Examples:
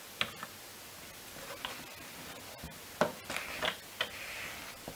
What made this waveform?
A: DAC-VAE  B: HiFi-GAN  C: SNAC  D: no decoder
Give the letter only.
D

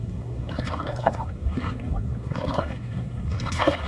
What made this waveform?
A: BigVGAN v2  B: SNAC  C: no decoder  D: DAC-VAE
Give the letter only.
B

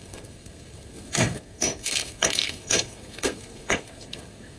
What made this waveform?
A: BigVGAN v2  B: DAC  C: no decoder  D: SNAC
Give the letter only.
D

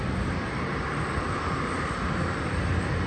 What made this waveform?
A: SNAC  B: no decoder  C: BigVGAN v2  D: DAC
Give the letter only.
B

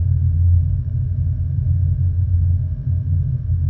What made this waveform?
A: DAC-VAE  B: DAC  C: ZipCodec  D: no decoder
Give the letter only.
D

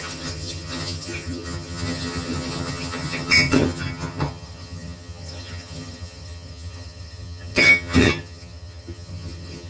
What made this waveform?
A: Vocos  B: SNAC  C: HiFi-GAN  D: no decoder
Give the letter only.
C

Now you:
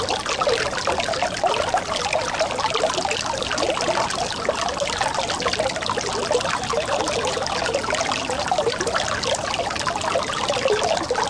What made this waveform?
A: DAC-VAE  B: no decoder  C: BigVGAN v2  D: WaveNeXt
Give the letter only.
B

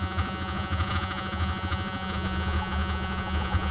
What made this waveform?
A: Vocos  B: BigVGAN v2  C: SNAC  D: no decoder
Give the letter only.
A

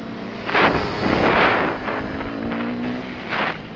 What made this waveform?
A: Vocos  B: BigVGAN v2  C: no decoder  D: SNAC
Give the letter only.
C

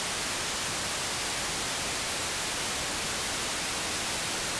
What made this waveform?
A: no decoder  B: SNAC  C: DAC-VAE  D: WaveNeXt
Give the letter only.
A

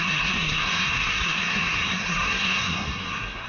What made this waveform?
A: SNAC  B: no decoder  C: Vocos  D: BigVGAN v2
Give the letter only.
A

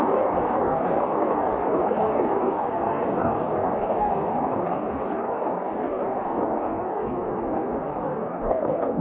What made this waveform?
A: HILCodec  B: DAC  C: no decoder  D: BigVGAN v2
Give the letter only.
B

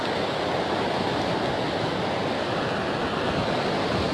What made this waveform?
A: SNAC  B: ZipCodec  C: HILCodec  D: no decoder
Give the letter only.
D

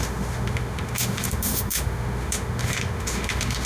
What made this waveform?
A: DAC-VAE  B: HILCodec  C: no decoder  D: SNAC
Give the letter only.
A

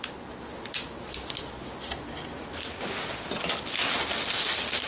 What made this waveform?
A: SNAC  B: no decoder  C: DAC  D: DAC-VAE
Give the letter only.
B